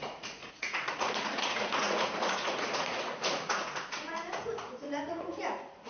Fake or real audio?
fake